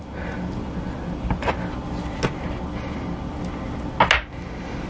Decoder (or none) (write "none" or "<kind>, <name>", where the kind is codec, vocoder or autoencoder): none